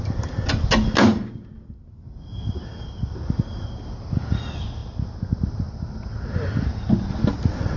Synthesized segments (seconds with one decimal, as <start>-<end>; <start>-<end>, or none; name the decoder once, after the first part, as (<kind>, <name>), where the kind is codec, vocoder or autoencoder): none